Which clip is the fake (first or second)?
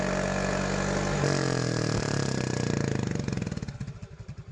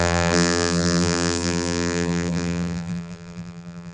second